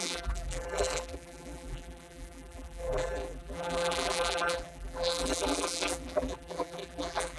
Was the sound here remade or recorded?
remade